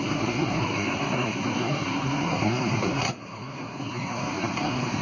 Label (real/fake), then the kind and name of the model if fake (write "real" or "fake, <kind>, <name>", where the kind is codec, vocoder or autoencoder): fake, codec, SNAC